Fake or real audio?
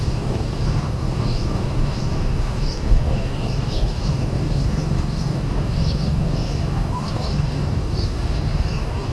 fake